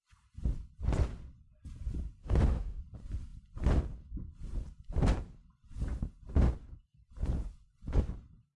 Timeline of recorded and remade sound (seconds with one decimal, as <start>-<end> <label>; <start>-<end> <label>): 0.0-2.2 recorded; 2.2-2.8 remade; 2.8-8.6 recorded